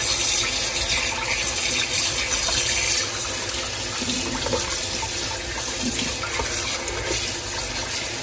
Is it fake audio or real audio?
real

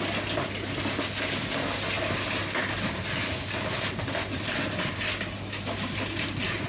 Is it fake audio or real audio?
real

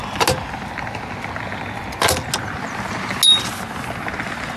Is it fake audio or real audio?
real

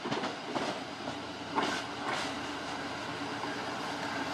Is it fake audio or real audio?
real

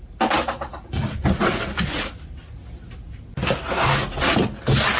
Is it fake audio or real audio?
real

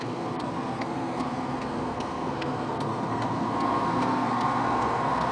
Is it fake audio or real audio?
fake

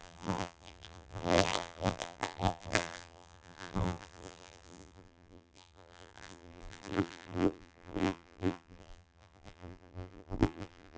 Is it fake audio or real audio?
fake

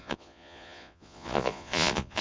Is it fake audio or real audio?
fake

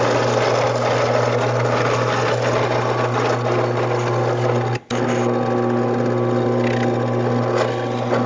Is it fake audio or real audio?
real